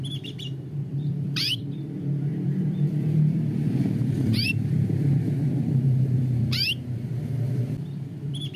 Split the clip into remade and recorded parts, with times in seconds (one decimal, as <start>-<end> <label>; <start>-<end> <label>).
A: 0.0-8.6 remade